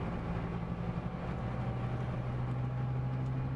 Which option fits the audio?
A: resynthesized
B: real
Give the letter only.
B